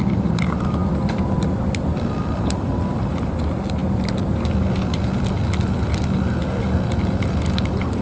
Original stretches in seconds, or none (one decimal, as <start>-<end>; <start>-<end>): 0.0-8.0